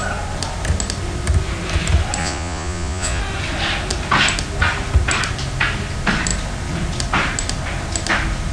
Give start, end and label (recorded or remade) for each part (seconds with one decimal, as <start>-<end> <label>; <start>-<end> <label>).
0.0-2.2 recorded; 2.2-3.2 remade; 3.2-8.5 recorded